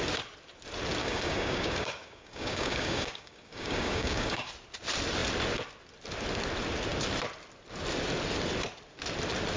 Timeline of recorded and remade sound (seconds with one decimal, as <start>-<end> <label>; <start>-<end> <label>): 0.0-1.0 recorded; 1.0-4.5 remade; 4.5-9.6 recorded